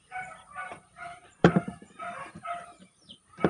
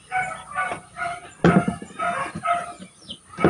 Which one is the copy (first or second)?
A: first